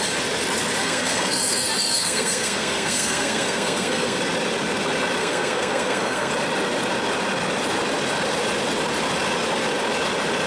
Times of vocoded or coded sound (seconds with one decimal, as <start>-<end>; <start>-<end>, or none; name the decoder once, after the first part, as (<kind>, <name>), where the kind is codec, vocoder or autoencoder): 0.8-4.2 (codec, SNAC); 5.2-6.3